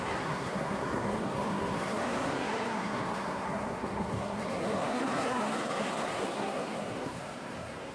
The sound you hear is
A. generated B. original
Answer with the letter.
A